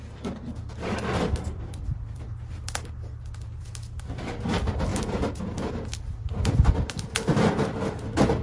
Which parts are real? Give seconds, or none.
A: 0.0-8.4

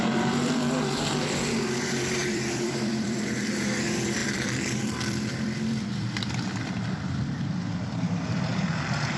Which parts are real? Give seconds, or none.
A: none

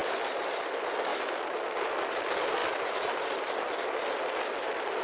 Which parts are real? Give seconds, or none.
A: 0.6-5.0

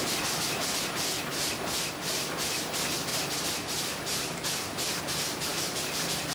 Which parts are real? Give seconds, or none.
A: 0.0-3.1; 5.0-5.5

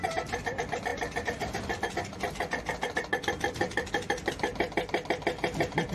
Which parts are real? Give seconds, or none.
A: 0.0-5.9

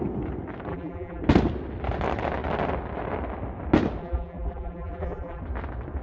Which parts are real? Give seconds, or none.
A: 0.0-0.7; 1.2-4.0; 5.4-6.0

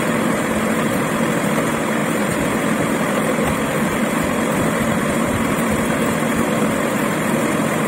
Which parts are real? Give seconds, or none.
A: 0.0-2.0; 5.7-7.9